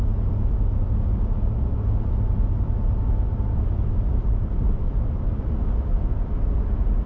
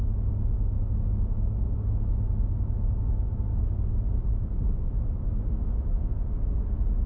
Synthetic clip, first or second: first